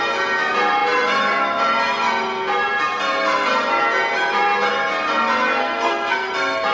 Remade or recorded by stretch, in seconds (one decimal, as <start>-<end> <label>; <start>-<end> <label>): 0.0-5.6 recorded; 5.6-6.3 remade; 6.3-6.7 recorded